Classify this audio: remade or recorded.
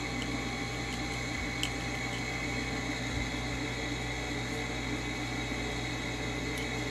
recorded